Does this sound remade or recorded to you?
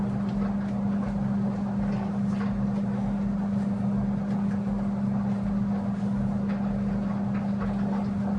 recorded